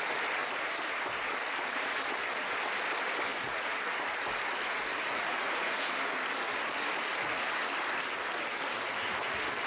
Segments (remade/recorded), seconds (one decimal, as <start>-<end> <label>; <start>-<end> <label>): 0.0-3.3 recorded; 3.3-3.8 remade; 3.8-4.9 recorded; 4.9-5.9 remade; 5.9-9.7 recorded